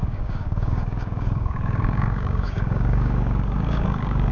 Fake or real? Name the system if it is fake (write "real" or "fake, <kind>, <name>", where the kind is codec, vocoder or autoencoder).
fake, codec, DAC